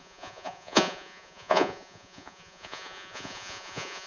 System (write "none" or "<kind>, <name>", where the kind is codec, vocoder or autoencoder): vocoder, Vocos